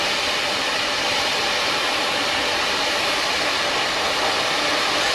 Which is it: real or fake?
real